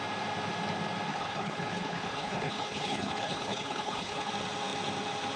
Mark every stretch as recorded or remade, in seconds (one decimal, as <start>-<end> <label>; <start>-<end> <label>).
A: 0.0-1.1 recorded; 1.1-4.3 remade; 4.3-5.4 recorded